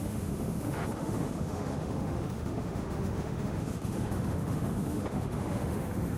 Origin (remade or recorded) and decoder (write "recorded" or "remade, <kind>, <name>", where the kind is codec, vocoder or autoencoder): remade, autoencoder, DAC-VAE